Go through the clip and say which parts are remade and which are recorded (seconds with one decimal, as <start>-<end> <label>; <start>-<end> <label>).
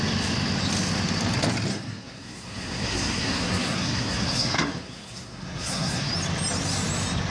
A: 0.0-1.7 recorded; 1.7-6.1 remade; 6.1-7.3 recorded